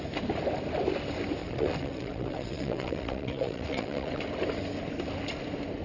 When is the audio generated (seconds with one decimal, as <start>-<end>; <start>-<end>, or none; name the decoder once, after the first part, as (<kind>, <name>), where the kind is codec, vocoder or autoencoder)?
1.4-4.2 (vocoder, WaveNeXt)